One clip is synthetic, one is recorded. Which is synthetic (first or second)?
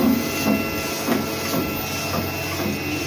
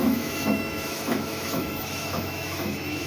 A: second